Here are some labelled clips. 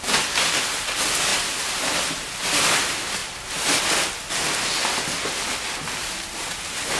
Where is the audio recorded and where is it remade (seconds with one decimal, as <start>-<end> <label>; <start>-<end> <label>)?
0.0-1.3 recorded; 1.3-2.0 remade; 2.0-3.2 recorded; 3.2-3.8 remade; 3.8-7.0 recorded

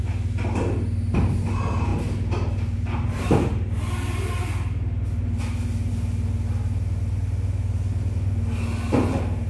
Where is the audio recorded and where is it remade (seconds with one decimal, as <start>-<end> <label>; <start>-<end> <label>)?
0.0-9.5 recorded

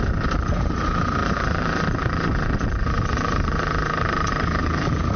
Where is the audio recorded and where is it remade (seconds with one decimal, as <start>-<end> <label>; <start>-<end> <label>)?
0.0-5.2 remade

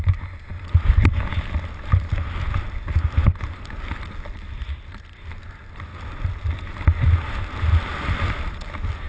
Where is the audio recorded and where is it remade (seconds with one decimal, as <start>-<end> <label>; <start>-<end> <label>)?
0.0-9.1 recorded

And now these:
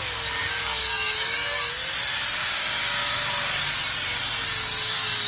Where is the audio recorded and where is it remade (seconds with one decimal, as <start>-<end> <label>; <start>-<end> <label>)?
0.0-0.4 recorded; 0.4-1.7 remade; 1.7-2.4 recorded; 2.4-3.7 remade; 3.7-4.6 recorded; 4.6-5.3 remade

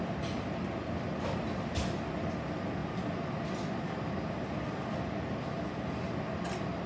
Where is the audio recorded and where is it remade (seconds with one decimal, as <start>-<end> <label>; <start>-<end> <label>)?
0.0-6.9 recorded